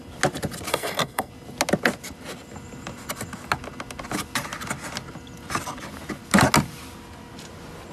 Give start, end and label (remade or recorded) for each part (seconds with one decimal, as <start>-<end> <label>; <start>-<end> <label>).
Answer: 0.0-0.7 recorded; 0.7-1.3 remade; 1.3-7.9 recorded